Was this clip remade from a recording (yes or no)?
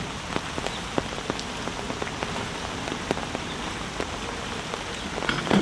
no